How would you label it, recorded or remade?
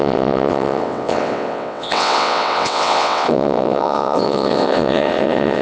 remade